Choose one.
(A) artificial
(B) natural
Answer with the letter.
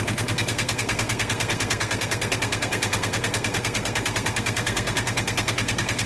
A